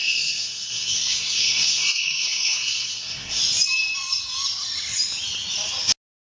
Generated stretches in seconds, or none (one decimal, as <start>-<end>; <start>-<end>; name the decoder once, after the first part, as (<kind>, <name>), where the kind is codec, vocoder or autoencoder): 0.0-3.4 (codec, SNAC)

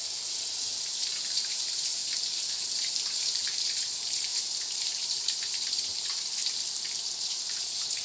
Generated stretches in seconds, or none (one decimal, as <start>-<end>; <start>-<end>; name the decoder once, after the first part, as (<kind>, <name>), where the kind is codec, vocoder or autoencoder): 0.0-6.4 (vocoder, BigVGAN v2); 7.3-8.0

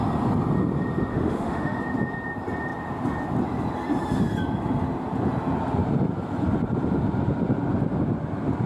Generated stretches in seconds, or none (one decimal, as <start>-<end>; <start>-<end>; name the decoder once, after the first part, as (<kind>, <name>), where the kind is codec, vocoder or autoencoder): 1.1-1.8 (autoencoder, DAC-VAE)